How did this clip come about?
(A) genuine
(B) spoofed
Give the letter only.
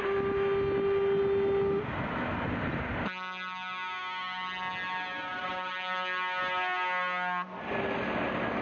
A